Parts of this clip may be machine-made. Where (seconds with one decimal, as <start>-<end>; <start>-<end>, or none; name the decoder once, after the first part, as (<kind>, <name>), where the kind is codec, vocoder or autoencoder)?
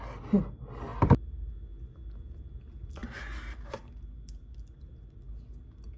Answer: none